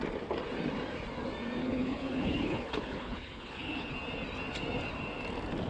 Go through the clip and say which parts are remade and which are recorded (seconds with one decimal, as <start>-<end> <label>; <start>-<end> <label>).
0.0-1.6 recorded; 1.6-3.9 remade; 3.9-5.7 recorded